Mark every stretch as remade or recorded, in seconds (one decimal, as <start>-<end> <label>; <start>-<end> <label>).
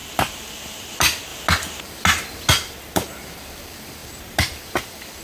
0.0-1.3 remade; 1.3-2.5 recorded; 2.5-5.2 remade